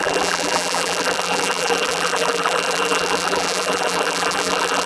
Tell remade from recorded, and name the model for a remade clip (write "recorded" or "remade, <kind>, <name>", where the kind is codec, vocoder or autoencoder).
remade, vocoder, BigVGAN v2